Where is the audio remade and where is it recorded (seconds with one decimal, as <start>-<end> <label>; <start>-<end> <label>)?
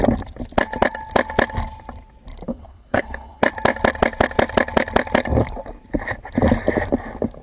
0.0-2.5 recorded; 2.5-3.4 remade; 3.4-7.4 recorded